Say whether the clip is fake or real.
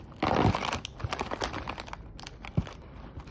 real